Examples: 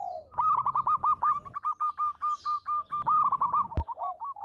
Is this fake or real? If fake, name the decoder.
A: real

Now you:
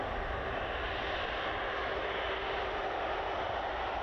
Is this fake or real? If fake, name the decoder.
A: real